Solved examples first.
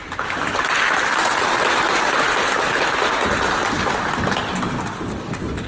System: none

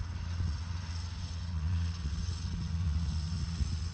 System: vocoder, Vocos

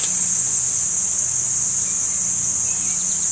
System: none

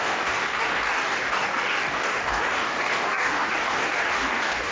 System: codec, DAC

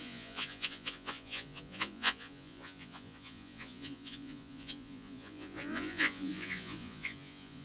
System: vocoder, Vocos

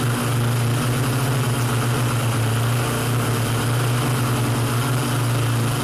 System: none